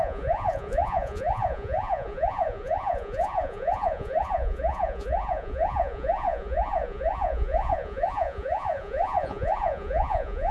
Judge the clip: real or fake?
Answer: fake